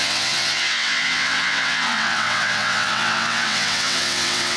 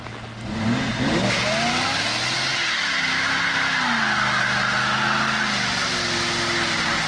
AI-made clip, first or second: first